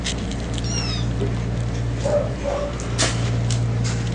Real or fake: real